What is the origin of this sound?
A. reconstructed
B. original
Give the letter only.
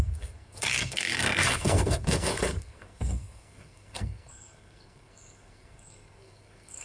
A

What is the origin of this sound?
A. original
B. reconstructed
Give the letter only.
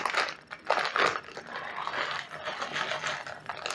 A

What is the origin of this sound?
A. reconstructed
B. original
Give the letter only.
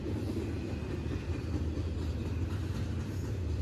B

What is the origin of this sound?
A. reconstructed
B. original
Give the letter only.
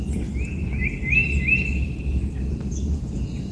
B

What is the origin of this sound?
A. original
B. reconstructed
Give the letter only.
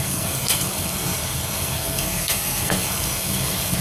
B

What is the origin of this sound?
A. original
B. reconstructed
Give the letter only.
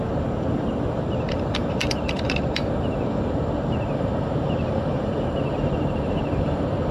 B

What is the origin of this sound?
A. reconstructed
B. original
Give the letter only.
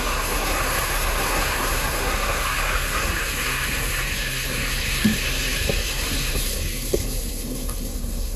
A